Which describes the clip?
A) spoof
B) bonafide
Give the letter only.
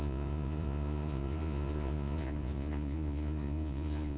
A